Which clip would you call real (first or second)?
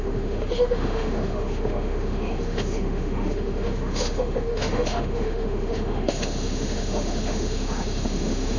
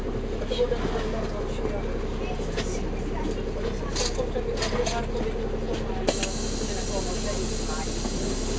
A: second